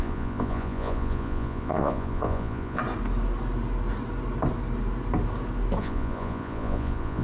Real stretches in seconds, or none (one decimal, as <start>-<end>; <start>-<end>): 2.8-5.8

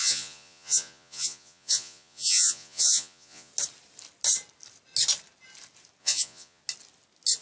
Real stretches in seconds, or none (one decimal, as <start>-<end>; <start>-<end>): 3.5-6.0; 6.6-7.4

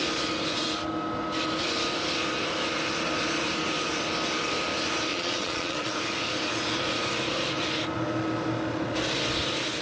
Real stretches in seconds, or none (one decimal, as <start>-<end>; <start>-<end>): 0.0-5.1; 5.9-9.8